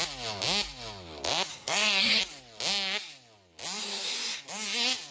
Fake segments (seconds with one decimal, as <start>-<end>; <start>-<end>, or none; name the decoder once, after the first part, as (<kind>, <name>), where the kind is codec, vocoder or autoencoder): 1.5-2.2 (codec, SNAC); 3.8-4.4